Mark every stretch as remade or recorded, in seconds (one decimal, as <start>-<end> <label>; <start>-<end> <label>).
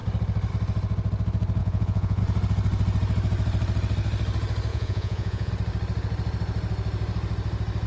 0.0-1.6 recorded; 1.6-2.2 remade; 2.2-4.7 recorded; 4.7-5.5 remade; 5.5-7.9 recorded